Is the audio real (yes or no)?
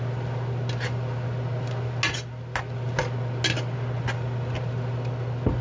yes